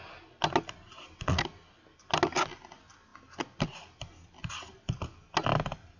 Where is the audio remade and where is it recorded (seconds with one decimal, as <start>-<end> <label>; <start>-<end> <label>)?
0.0-6.0 recorded